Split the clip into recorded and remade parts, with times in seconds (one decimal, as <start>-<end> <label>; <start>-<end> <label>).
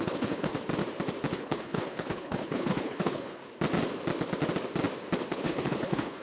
0.0-0.5 remade; 0.5-1.3 recorded; 1.3-3.4 remade; 3.4-5.3 recorded; 5.3-6.2 remade